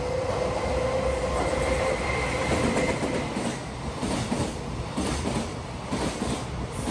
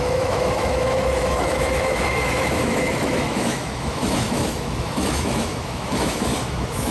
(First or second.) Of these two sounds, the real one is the first